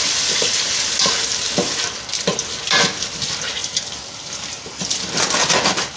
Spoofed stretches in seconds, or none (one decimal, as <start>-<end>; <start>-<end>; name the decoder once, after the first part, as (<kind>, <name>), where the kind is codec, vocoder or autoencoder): none